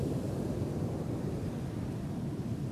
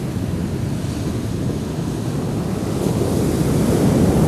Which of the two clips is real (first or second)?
second